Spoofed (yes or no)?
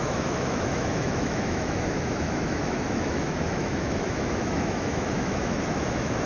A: yes